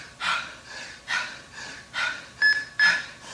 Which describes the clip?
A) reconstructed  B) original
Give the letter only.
B